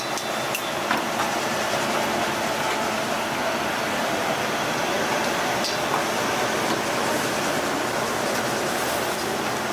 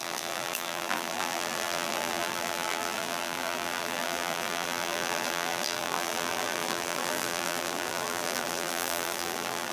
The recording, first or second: first